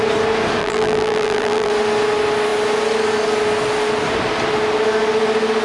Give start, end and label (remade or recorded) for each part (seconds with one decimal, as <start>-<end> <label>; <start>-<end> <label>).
0.0-0.6 recorded; 0.6-1.7 remade; 1.7-5.6 recorded